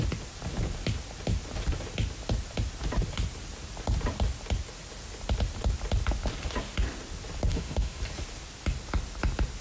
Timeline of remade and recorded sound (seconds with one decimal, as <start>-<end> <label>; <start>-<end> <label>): 0.0-7.5 recorded; 7.5-8.0 remade; 8.0-9.6 recorded